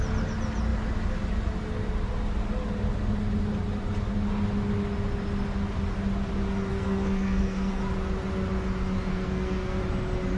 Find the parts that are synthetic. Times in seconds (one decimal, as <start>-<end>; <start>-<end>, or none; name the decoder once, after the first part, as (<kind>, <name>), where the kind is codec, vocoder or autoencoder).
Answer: 6.7-7.8 (codec, SNAC); 9.1-9.8